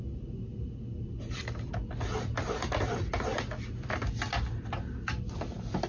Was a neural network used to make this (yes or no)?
no